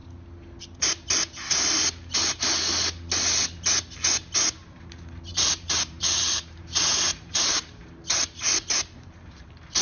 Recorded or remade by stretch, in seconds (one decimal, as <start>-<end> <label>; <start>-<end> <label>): 0.0-5.3 recorded; 5.3-8.0 remade; 8.0-9.8 recorded